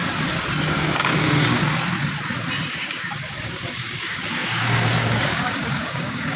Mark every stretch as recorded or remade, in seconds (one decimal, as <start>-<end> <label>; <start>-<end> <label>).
0.0-0.6 recorded; 0.6-1.6 remade; 1.6-2.7 recorded; 2.7-6.4 remade